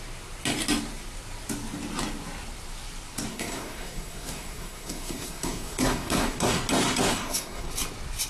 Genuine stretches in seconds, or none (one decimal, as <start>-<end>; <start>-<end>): 0.0-3.3; 6.6-7.1; 7.7-8.3